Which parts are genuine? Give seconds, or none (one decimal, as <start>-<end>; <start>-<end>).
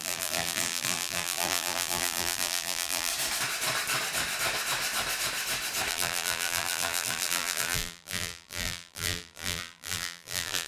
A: 3.1-5.9